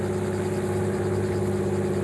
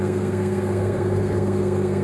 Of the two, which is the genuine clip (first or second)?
first